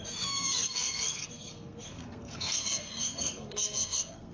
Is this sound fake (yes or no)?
yes